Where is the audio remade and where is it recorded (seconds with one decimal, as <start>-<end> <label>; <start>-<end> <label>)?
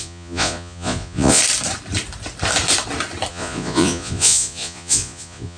0.0-1.4 remade; 1.4-3.3 recorded; 3.3-5.6 remade